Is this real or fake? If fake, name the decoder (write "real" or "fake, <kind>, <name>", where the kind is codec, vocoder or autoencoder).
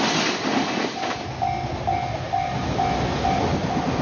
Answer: real